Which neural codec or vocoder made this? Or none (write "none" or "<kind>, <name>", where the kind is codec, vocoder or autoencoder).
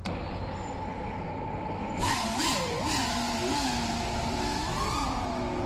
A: none